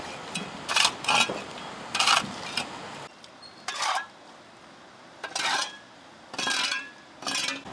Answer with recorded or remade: recorded